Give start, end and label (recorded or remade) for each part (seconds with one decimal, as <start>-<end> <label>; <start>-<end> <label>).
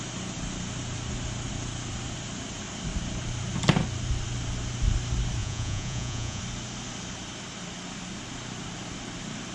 0.0-5.4 recorded; 5.4-6.4 remade; 6.4-9.5 recorded